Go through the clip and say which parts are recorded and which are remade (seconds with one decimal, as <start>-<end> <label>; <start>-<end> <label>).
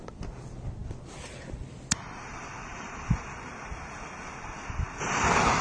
0.0-5.6 recorded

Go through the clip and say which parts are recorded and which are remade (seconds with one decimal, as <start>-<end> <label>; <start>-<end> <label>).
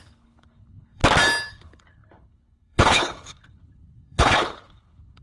0.0-1.0 remade; 1.0-1.5 recorded; 1.5-5.2 remade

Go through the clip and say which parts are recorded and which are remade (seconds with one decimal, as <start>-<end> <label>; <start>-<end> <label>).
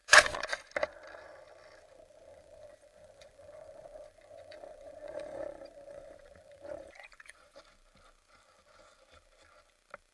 0.0-0.6 remade; 0.6-2.3 recorded; 2.3-7.6 remade; 7.6-10.1 recorded